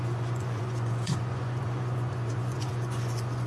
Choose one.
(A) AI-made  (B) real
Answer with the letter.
A